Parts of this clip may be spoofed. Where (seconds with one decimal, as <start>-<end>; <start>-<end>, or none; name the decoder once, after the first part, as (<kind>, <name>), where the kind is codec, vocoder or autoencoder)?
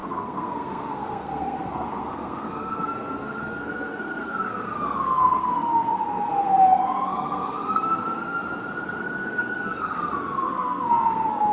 0.0-8.4 (codec, SNAC); 9.0-11.5